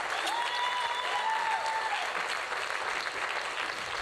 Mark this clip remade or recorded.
recorded